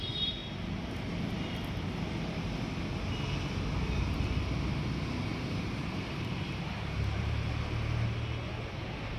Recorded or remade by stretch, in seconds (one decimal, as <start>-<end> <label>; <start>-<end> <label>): 0.0-5.3 recorded; 5.3-7.5 remade; 7.5-9.2 recorded